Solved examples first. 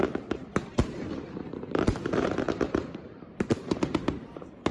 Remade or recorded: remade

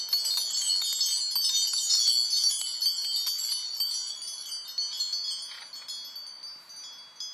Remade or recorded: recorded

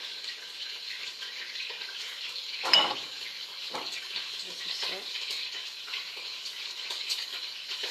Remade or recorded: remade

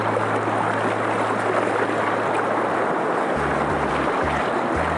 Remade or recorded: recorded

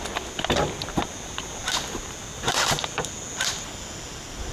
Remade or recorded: recorded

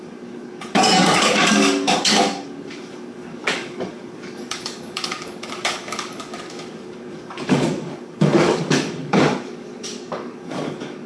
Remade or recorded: remade